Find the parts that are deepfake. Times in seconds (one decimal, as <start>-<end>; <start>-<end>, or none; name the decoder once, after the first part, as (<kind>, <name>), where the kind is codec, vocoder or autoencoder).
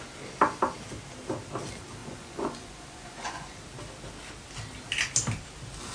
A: 2.0-3.6 (vocoder, Vocos)